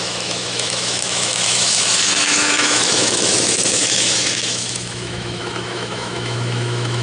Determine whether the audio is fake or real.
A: fake